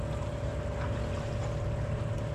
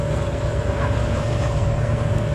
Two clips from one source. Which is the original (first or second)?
first